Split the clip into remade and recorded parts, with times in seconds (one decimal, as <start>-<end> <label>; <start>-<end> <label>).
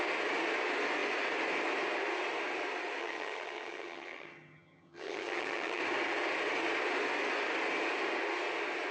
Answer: 0.0-3.0 recorded; 3.0-5.8 remade; 5.8-8.9 recorded